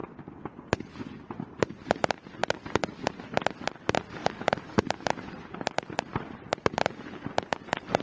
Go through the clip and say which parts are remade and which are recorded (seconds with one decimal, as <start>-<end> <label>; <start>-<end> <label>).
0.0-1.6 recorded; 1.6-2.4 remade; 2.4-3.2 recorded; 3.2-8.0 remade